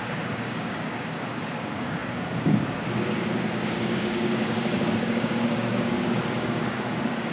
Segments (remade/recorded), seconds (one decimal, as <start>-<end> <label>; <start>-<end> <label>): 0.0-7.3 remade